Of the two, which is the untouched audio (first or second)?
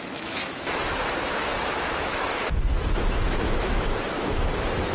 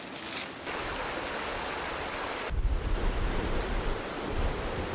second